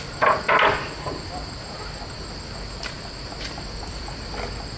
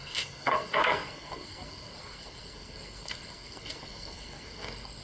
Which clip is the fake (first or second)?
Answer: second